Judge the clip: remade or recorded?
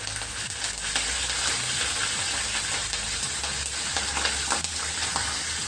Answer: recorded